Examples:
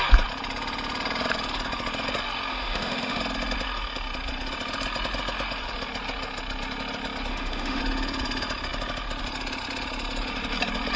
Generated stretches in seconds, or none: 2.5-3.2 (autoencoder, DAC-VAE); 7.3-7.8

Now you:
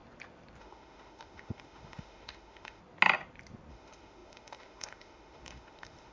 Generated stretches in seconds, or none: 0.6-2.8 (autoencoder, DAC-VAE); 3.7-6.1

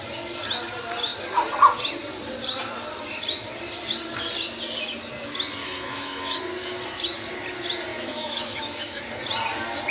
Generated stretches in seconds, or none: 5.6-6.4 (autoencoder, DAC-VAE); 7.9-9.0

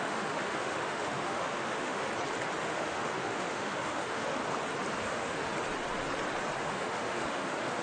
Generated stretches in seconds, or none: 0.0-2.1 (autoencoder, DAC-VAE); 2.6-4.4; 5.0-5.5; 6.6-7.8

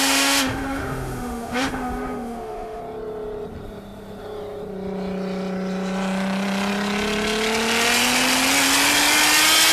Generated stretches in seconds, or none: 0.0-2.8 (autoencoder, DAC-VAE)

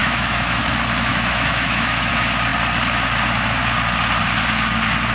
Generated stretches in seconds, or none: 0.0-0.6 (autoencoder, DAC-VAE); 1.1-2.1